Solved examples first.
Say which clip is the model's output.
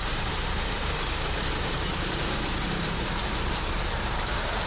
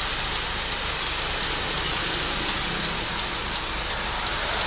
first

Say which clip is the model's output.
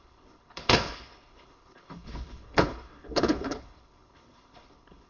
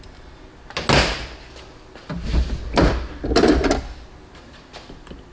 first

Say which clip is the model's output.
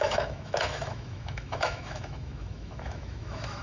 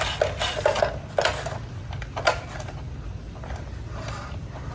first